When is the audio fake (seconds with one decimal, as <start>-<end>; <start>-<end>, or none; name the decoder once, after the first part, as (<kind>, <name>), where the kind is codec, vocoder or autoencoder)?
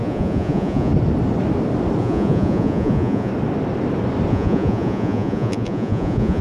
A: 0.0-0.9 (vocoder, Vocos); 2.0-3.3; 4.3-6.4